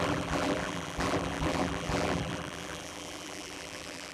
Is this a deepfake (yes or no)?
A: yes